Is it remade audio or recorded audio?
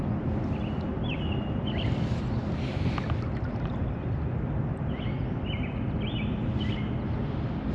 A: recorded